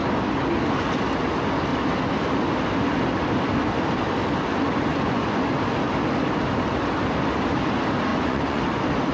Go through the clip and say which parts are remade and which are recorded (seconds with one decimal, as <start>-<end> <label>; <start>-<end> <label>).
0.0-4.9 recorded; 4.9-5.5 remade; 5.5-8.1 recorded; 8.1-8.6 remade; 8.6-9.1 recorded

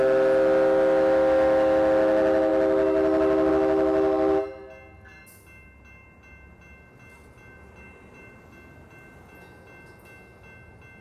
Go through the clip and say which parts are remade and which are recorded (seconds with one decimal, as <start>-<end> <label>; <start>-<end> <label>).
0.0-11.0 recorded